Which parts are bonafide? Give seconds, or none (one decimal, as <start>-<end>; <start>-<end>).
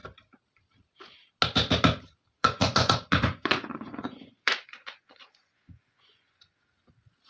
0.0-2.4; 6.5-7.3